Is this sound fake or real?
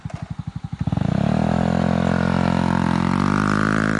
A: real